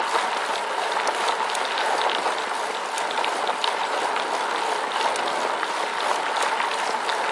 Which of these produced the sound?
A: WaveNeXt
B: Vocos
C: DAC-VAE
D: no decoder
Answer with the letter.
D